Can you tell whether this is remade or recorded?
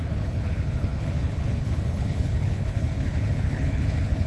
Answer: remade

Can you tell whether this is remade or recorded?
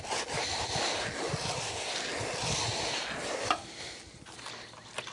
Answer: recorded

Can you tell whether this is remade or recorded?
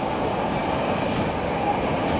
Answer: recorded